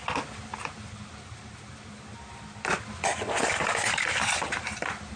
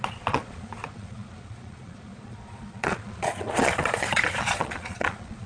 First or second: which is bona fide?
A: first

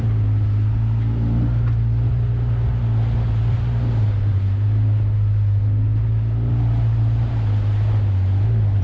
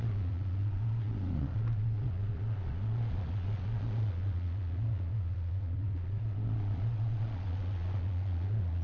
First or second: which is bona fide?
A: first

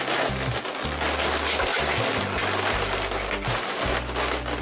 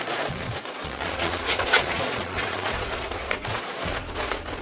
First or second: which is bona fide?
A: first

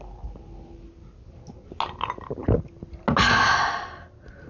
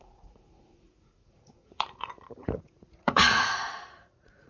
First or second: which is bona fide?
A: first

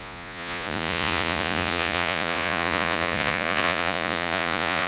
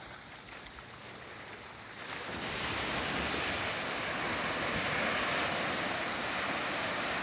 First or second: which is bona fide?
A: second